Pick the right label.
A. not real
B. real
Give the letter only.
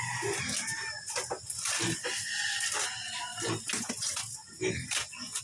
B